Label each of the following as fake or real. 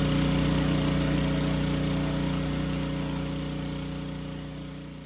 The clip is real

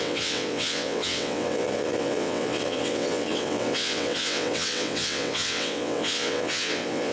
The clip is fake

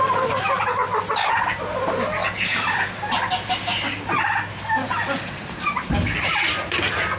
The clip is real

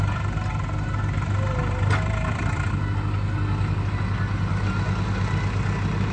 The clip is real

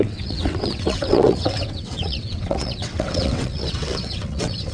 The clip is fake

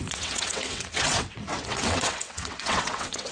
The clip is fake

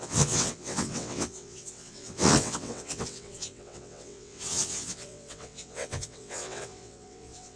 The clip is fake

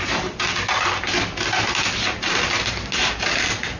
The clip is real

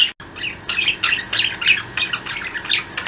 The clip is real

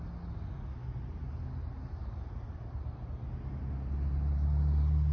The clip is real